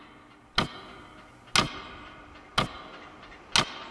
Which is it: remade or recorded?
recorded